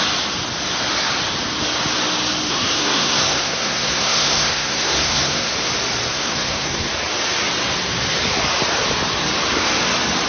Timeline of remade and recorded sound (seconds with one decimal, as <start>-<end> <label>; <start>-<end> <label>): 0.0-2.5 recorded; 2.5-5.5 remade; 5.5-6.1 recorded; 6.1-6.9 remade; 6.9-10.3 recorded